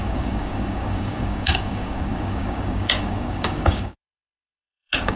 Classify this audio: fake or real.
fake